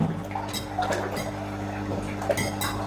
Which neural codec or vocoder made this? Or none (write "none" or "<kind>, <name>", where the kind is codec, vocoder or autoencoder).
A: none